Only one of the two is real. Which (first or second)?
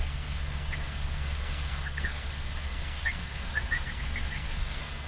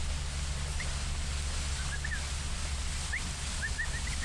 second